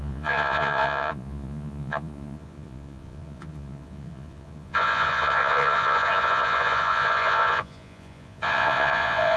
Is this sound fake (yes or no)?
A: yes